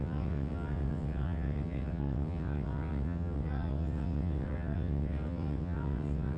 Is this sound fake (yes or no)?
yes